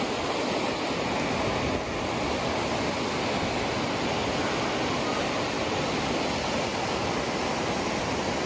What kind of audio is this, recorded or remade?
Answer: recorded